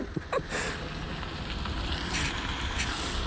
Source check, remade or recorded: recorded